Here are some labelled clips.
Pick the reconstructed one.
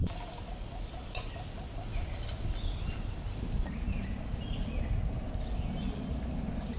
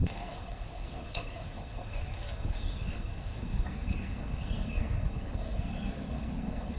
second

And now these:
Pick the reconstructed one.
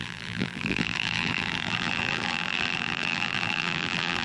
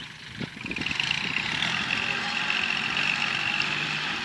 first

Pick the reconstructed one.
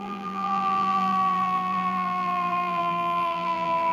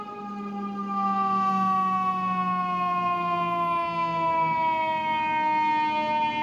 first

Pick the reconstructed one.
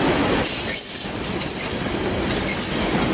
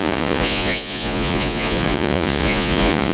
second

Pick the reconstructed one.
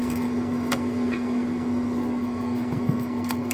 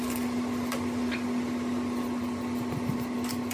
first